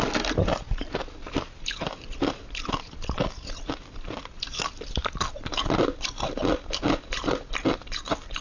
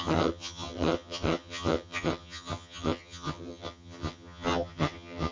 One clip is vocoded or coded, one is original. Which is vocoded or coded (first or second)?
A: second